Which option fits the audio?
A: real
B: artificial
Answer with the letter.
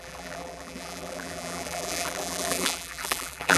B